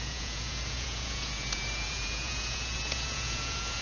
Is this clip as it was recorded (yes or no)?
no